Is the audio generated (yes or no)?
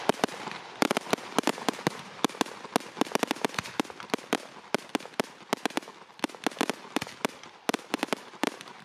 no